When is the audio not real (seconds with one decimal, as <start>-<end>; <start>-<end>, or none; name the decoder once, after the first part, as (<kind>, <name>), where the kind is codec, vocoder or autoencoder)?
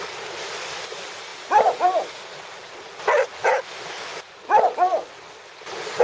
none